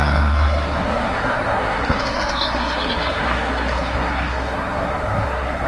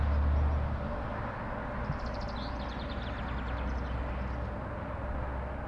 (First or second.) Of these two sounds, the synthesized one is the first